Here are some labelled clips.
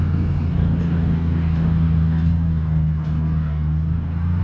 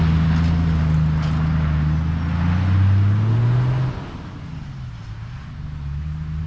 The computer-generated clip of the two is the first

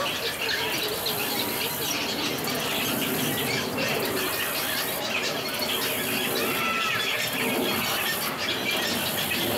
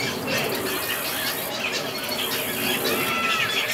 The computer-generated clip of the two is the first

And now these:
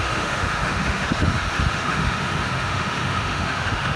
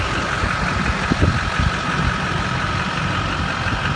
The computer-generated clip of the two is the first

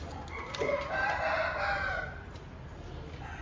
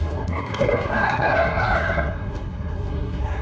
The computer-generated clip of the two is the second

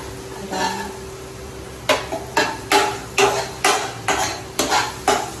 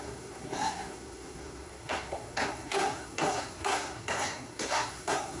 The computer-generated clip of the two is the second